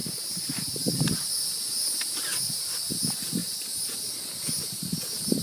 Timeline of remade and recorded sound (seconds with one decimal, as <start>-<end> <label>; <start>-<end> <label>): 0.0-5.4 recorded